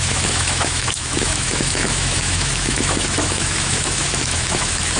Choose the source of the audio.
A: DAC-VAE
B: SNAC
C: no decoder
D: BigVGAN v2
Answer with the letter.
A